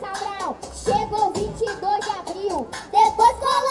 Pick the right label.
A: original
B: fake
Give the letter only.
B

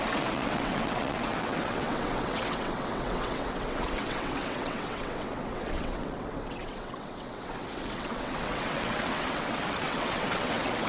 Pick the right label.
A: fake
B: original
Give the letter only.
A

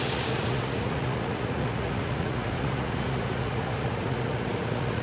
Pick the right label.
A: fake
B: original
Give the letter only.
A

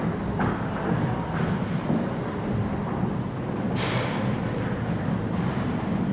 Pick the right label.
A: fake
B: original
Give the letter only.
B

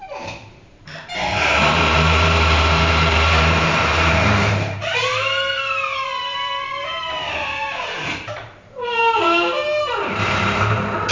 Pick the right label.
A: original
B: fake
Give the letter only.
B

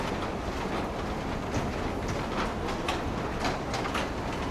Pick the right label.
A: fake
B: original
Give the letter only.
B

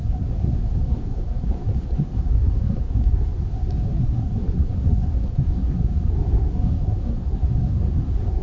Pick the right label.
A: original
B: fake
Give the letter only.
B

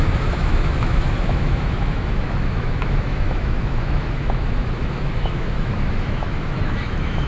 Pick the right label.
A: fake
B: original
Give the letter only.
A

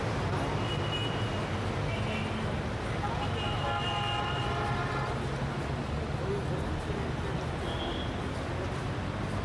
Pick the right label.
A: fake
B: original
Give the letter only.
B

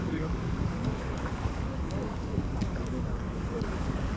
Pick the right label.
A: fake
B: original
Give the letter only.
A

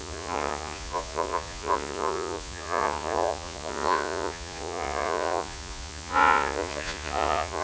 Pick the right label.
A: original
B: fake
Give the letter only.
B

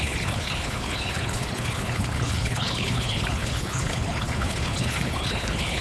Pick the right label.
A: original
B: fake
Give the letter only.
B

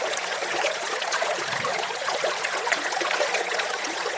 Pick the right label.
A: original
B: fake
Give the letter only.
B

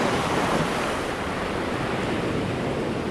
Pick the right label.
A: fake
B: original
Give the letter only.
B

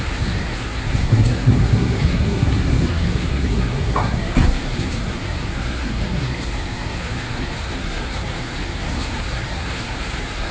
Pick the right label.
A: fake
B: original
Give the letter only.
A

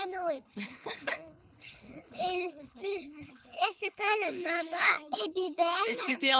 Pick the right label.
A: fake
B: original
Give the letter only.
A